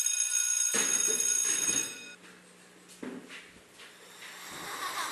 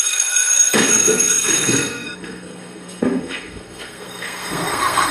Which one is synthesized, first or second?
second